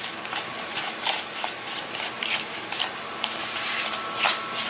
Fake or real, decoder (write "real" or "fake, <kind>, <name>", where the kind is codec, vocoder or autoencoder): fake, vocoder, BigVGAN v2